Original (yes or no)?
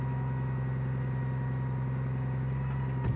yes